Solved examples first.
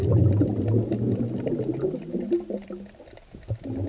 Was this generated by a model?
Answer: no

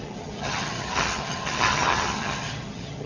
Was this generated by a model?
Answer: yes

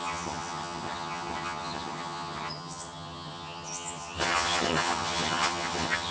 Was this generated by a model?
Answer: yes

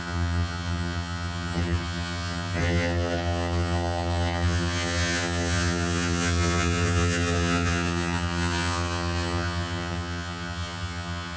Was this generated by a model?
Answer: yes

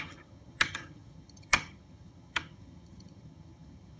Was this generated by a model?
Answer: yes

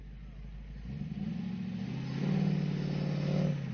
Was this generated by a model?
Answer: no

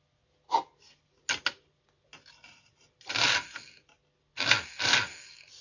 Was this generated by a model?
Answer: no